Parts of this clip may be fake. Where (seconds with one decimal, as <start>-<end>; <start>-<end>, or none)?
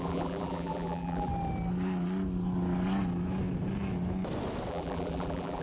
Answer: 0.0-1.3; 4.7-5.6